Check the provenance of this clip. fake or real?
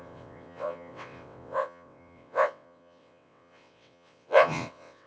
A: fake